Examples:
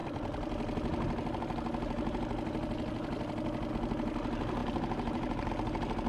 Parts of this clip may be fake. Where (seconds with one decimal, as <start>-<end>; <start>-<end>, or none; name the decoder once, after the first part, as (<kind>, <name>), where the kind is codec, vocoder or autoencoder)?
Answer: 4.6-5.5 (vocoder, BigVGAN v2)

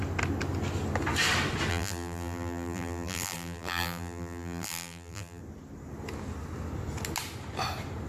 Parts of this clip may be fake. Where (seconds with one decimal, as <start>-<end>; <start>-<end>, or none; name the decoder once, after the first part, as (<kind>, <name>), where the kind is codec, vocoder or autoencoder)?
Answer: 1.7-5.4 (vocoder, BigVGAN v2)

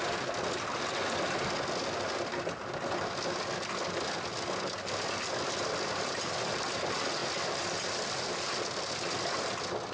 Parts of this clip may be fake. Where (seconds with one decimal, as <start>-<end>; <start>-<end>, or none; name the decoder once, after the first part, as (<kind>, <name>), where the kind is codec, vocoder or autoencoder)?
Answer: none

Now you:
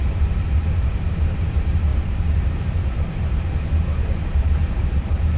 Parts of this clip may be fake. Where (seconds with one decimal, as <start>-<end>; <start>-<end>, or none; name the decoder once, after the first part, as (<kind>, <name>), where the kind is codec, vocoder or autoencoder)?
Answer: 0.0-5.4 (vocoder, BigVGAN v2)

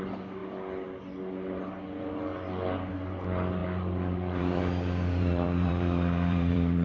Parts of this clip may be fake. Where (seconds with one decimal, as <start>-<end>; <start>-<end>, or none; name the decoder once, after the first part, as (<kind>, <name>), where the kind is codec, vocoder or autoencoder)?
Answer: 0.0-0.4 (vocoder, BigVGAN v2); 2.9-6.8

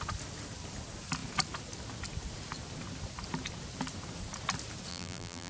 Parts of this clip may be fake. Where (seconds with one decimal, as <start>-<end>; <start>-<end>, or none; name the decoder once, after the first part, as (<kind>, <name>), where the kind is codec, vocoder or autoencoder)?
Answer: 4.9-5.5 (vocoder, BigVGAN v2)

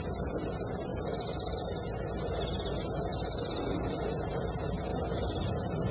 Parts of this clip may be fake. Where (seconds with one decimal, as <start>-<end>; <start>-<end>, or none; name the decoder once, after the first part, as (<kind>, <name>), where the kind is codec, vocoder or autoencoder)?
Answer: 4.9-5.5 (vocoder, BigVGAN v2)